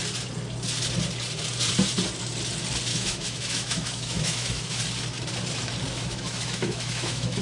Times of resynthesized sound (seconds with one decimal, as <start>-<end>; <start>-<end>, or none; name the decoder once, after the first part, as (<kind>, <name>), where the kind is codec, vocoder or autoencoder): 2.9-4.8 (autoencoder, DAC-VAE); 5.9-7.4